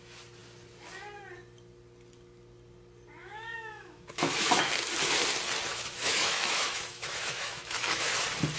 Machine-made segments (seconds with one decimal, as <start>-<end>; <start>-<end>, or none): 3.2-4.7; 5.7-8.1